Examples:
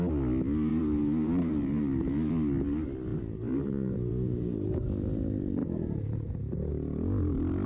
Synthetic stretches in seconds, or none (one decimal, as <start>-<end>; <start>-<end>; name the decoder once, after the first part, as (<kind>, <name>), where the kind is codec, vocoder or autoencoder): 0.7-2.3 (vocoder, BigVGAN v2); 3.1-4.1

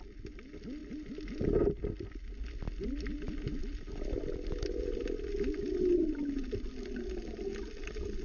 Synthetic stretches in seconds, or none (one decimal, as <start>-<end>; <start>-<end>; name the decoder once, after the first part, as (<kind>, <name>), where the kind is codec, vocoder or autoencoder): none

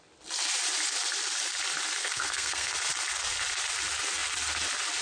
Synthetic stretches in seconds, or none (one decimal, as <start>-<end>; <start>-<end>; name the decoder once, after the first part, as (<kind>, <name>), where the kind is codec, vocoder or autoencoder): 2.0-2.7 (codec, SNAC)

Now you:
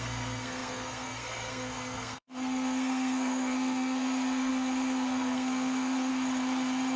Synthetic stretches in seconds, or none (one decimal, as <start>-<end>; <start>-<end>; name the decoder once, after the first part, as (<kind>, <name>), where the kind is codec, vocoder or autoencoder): 0.0-6.1 (codec, SNAC)

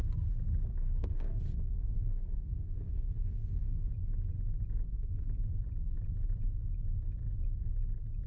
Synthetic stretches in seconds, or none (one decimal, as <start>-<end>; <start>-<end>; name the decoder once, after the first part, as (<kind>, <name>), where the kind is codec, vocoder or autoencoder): 0.7-3.9 (codec, SNAC); 4.9-5.4